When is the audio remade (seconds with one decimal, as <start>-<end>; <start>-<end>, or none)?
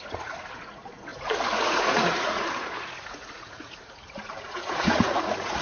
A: 0.0-5.6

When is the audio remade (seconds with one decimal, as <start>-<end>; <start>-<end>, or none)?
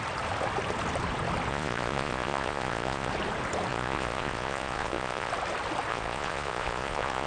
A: 1.5-3.1; 3.7-5.3; 5.9-7.3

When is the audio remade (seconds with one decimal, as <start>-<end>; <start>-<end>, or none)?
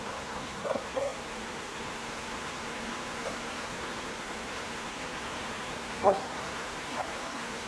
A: 0.0-7.7